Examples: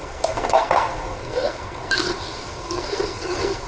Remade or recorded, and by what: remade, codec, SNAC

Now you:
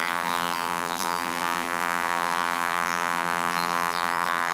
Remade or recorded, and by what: remade, vocoder, BigVGAN v2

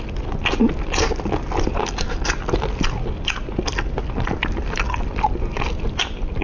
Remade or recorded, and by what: recorded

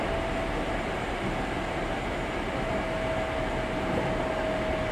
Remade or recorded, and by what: recorded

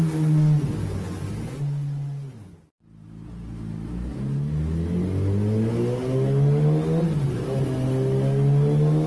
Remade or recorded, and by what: recorded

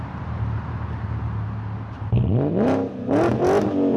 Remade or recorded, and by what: recorded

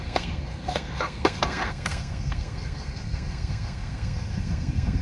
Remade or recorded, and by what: remade, codec, SNAC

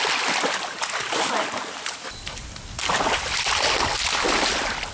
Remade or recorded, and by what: recorded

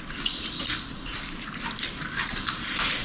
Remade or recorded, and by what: recorded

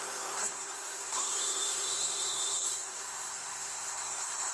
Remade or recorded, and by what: remade, codec, SNAC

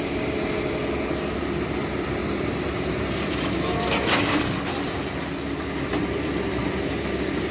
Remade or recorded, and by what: recorded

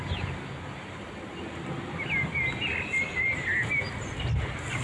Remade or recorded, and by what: recorded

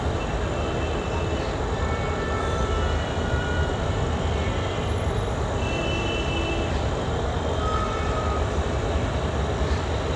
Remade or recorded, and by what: remade, vocoder, BigVGAN v2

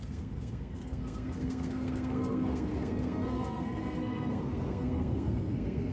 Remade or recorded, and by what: remade, codec, SNAC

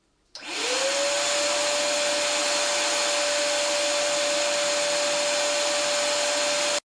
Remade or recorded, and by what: recorded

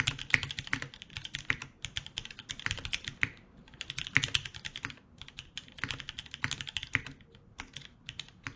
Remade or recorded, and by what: recorded